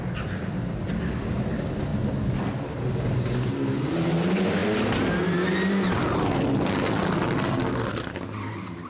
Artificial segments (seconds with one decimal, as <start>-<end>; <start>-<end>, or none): none